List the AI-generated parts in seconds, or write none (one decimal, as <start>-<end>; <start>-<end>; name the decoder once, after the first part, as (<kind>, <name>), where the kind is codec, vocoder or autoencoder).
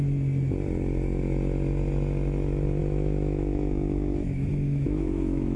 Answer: 2.8-5.6 (autoencoder, DAC-VAE)